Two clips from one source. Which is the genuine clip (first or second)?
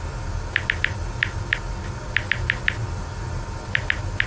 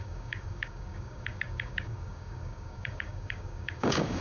first